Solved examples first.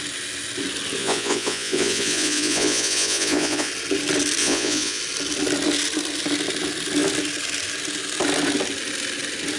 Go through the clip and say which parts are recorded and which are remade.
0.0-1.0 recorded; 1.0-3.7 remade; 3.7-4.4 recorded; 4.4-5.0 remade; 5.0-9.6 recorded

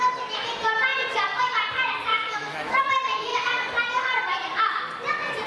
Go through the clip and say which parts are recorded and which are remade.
0.0-2.1 recorded; 2.1-2.9 remade; 2.9-5.5 recorded

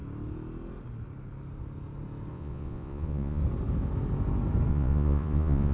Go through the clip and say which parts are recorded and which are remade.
0.0-2.3 recorded; 2.3-3.4 remade; 3.4-4.7 recorded; 4.7-5.7 remade

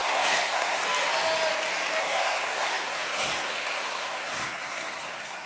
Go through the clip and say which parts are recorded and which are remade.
0.0-0.8 remade; 0.8-2.0 recorded; 2.0-5.5 remade